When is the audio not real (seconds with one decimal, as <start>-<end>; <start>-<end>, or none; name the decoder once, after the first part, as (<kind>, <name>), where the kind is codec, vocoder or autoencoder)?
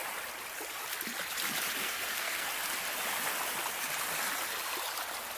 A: 1.8-2.5 (codec, SNAC)